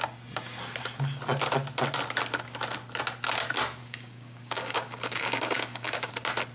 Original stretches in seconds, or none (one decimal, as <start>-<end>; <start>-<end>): 0.0-3.8; 6.1-6.5